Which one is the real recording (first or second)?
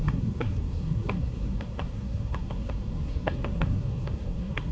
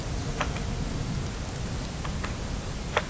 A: second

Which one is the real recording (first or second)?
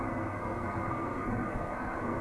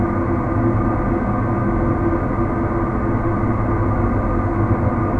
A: second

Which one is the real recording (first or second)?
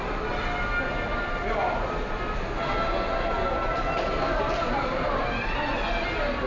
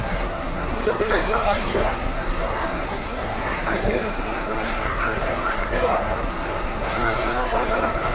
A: first